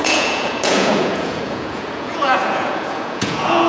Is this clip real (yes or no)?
no